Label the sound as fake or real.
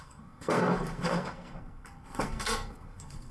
fake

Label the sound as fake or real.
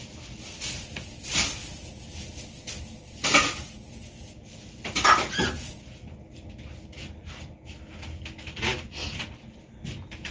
real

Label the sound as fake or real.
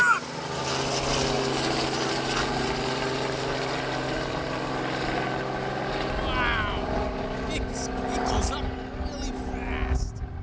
real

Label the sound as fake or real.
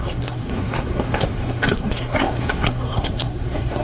fake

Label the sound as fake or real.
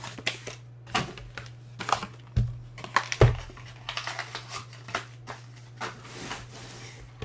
real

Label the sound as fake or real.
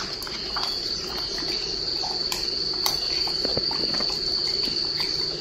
real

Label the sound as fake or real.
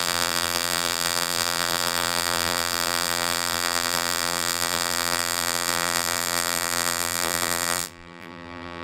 fake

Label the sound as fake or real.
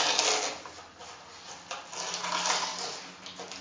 real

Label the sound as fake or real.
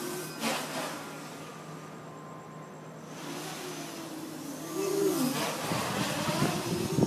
real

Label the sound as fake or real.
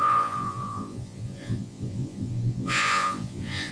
fake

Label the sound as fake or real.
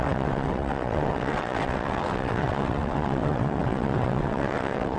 fake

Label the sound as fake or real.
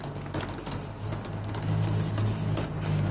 real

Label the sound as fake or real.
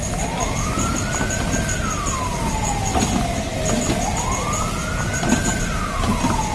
real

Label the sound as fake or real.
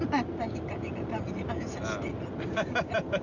real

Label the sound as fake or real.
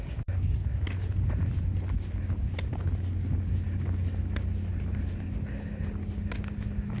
real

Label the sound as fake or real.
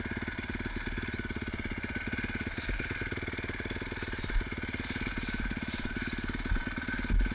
real